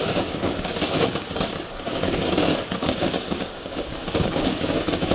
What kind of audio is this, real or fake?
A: fake